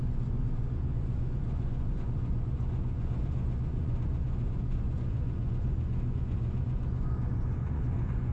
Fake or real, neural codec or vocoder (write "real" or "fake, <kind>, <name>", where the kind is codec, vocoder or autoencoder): fake, vocoder, Vocos